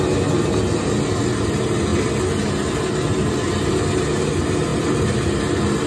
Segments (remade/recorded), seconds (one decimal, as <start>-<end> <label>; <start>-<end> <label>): 0.0-5.9 recorded